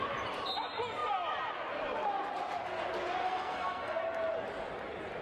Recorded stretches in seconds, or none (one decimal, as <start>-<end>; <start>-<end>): 0.0-3.2; 4.0-5.2